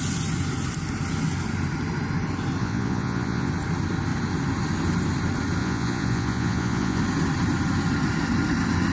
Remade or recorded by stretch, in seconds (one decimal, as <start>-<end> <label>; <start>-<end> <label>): 0.0-2.6 recorded; 2.6-3.5 remade; 3.5-5.6 recorded; 5.6-7.0 remade; 7.0-8.9 recorded